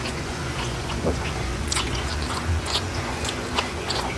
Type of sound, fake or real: fake